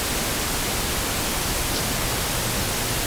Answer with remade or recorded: recorded